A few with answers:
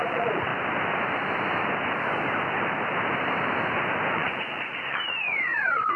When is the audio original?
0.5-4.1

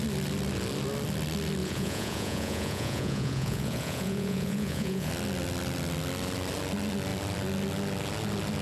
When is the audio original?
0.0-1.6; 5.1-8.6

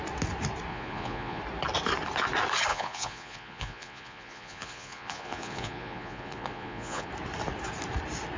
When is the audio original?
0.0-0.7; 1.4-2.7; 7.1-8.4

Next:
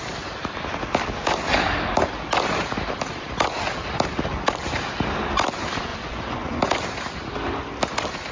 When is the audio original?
0.0-5.9; 6.6-8.3